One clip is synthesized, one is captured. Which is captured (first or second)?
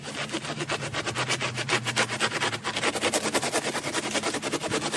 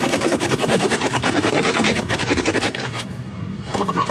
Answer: first